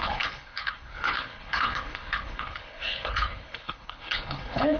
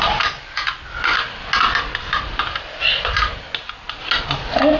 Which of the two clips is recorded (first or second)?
second